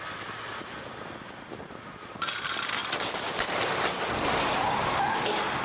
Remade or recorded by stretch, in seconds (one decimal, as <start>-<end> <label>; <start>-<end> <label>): 0.0-5.6 recorded